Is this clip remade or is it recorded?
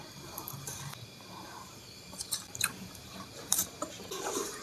remade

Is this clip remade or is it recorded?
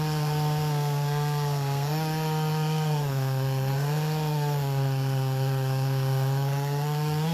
remade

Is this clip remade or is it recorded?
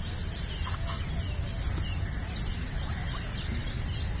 recorded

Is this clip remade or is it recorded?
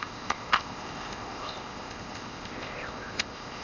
remade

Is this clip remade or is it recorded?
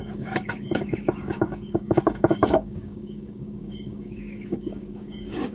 remade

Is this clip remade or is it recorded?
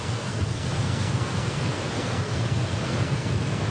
remade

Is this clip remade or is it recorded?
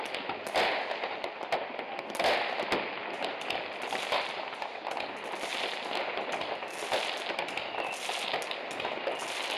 recorded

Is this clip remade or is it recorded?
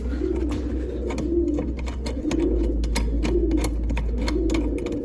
recorded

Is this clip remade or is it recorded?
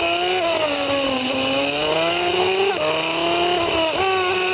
recorded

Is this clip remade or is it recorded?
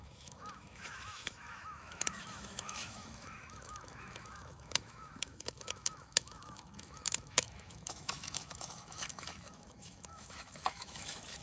remade